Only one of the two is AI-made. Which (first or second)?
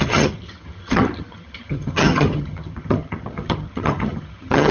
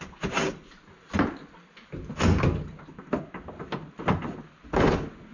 first